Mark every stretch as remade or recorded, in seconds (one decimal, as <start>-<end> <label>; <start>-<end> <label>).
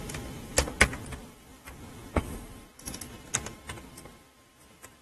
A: 0.0-5.0 recorded